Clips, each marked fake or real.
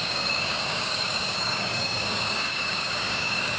fake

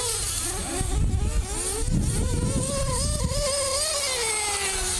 real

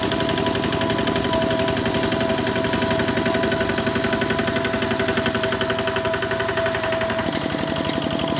real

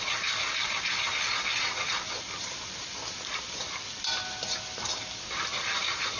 real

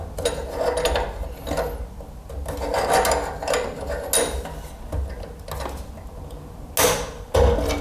real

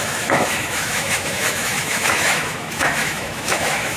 fake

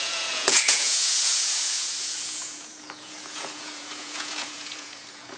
fake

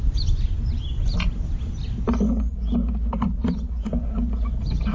real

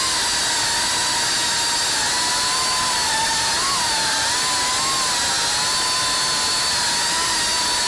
real